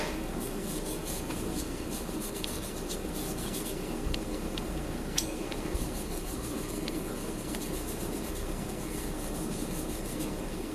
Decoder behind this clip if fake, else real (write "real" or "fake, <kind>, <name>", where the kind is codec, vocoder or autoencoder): fake, codec, SNAC